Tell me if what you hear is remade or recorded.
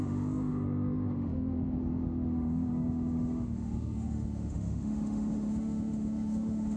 remade